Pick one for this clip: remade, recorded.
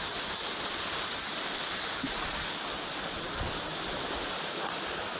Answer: recorded